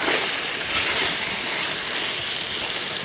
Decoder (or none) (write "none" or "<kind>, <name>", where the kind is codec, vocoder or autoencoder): none